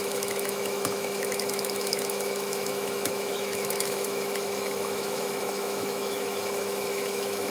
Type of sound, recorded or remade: remade